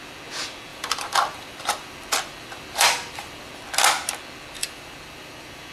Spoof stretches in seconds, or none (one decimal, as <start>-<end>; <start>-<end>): 0.7-3.5; 4.6-5.7